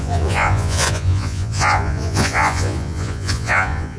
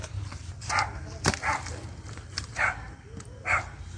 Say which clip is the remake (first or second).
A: first